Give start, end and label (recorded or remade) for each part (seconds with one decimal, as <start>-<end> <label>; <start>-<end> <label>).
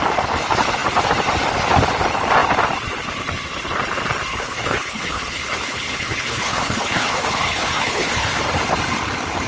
0.0-4.3 recorded; 4.3-8.4 remade; 8.4-9.5 recorded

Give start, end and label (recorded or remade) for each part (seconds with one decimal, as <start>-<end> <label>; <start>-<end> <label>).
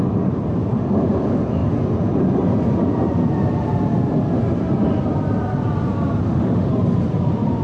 0.0-6.2 recorded; 6.2-6.7 remade; 6.7-7.6 recorded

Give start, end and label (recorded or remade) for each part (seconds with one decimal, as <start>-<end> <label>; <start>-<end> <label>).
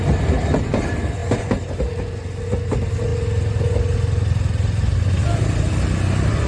0.0-6.5 recorded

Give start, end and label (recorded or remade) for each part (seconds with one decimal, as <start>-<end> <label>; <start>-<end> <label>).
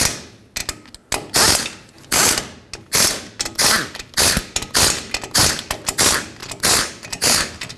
0.0-7.8 recorded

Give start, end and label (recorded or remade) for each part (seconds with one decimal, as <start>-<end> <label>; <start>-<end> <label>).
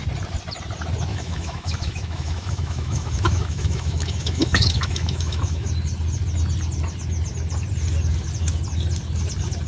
0.0-1.1 recorded; 1.1-5.7 remade; 5.7-9.7 recorded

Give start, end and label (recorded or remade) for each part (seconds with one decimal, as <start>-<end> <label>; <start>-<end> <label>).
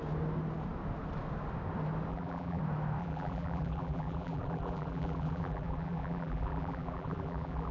0.0-2.1 recorded; 2.1-2.6 remade; 2.6-3.0 recorded; 3.0-7.7 remade